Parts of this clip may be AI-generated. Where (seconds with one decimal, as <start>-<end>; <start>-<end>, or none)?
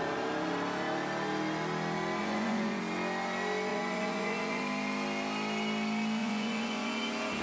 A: 2.2-2.8; 3.7-4.6; 6.2-7.4